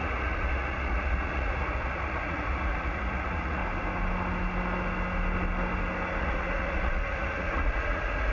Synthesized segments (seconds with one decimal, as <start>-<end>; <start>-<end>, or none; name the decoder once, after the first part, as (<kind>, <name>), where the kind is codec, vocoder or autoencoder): 0.0-3.6 (vocoder, Vocos); 6.2-8.3